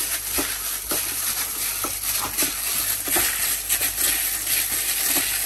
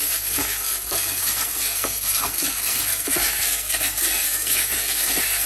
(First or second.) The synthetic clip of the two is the second